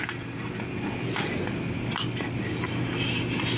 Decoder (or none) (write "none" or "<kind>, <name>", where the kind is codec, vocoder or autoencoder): none